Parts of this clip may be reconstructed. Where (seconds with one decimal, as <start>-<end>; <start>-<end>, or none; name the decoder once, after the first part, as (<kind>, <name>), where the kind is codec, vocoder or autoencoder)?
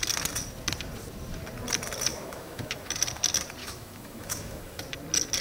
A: 2.1-2.9 (autoencoder, DAC-VAE); 3.6-4.8